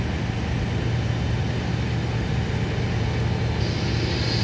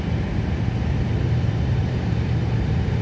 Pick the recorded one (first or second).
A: first